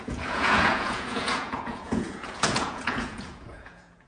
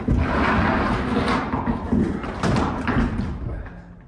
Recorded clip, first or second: second